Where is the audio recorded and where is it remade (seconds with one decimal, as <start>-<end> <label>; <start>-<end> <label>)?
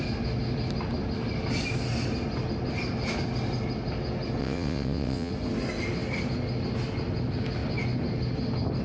0.0-4.4 recorded; 4.4-5.3 remade; 5.3-8.8 recorded